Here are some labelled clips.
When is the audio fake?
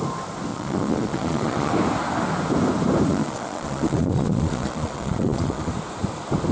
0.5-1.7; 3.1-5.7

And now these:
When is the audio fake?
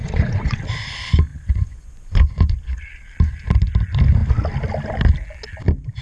0.0-0.6; 1.3-2.8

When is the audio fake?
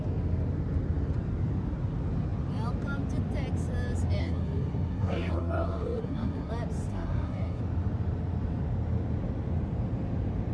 4.2-6.5; 6.9-7.6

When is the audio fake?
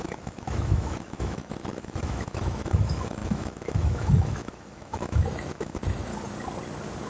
0.0-6.1